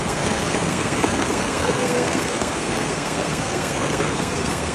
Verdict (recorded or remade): remade